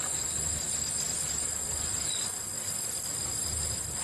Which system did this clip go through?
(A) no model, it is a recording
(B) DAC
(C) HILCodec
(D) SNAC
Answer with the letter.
A